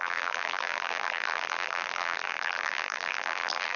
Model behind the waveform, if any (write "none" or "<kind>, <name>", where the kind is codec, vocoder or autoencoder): vocoder, BigVGAN v2